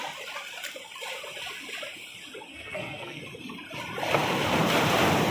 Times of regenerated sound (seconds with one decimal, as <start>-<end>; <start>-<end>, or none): 2.5-3.2